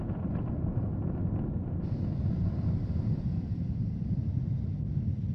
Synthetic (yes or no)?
no